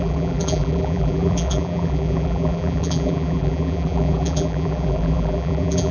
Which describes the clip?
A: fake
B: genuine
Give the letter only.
A